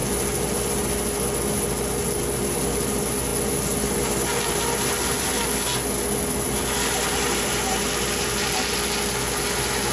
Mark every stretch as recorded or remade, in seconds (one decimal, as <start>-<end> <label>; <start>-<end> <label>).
0.0-9.9 recorded

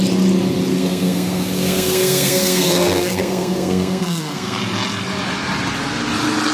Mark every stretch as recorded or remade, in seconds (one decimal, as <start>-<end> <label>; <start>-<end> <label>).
0.0-0.7 recorded; 0.7-4.6 remade; 4.6-6.5 recorded

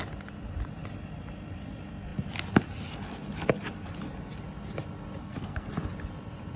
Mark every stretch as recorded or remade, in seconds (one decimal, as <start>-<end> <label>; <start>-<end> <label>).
0.0-5.2 recorded; 5.2-5.7 remade; 5.7-6.6 recorded

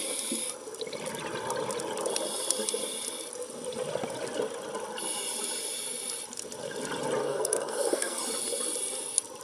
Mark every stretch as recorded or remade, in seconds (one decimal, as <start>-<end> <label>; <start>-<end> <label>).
0.0-7.2 recorded; 7.2-8.2 remade; 8.2-9.4 recorded

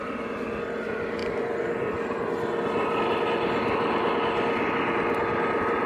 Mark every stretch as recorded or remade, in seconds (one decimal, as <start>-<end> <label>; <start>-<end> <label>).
0.0-5.9 recorded